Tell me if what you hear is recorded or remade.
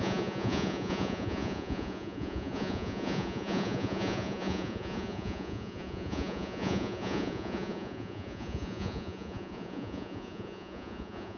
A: remade